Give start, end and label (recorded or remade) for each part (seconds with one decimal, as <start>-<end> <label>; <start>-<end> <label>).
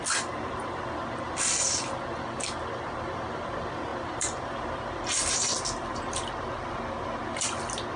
0.0-8.0 remade